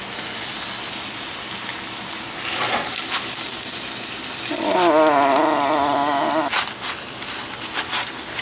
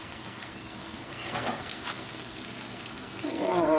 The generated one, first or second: second